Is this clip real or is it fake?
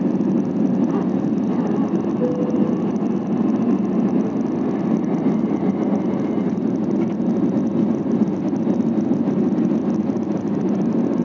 real